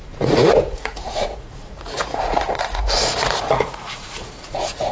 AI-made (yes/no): yes